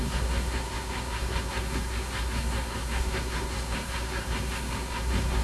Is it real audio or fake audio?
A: fake